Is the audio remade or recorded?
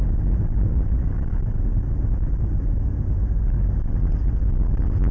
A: recorded